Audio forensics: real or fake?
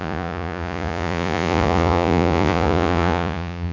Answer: fake